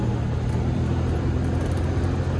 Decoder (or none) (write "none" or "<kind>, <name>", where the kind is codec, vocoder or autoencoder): none